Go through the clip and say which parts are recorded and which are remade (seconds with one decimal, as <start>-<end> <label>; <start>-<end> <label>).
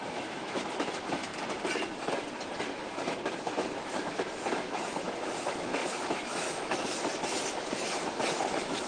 0.0-1.3 remade; 1.3-2.6 recorded; 2.6-8.9 remade